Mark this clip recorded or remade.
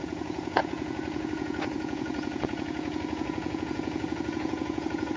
remade